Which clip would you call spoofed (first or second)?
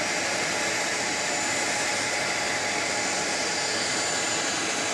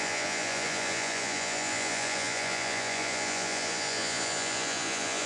second